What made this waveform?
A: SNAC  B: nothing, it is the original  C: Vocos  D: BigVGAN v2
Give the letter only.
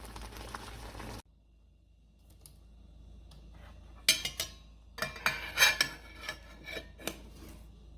B